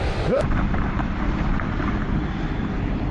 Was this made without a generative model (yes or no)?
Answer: no